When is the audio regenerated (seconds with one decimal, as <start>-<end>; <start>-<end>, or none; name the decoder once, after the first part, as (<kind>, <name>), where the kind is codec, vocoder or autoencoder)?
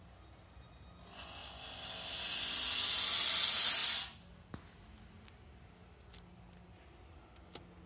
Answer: none